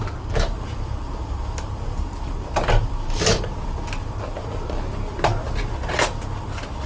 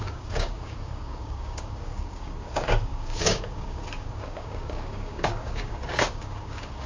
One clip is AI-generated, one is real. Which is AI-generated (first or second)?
second